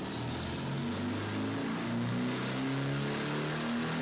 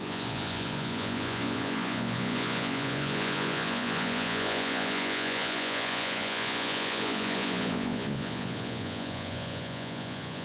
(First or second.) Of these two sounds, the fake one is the second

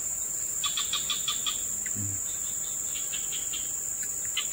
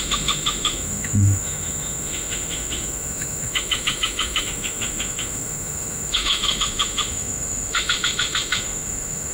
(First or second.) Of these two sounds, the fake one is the second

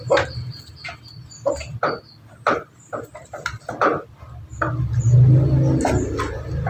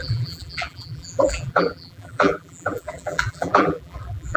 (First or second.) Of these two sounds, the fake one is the second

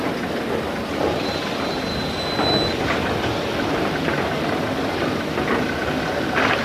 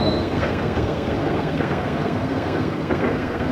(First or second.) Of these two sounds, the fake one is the second